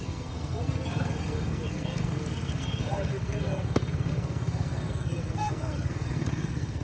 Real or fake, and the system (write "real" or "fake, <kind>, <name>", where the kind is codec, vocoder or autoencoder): fake, codec, SNAC